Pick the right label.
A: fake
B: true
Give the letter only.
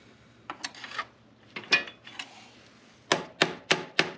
B